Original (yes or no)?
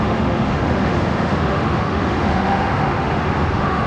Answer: no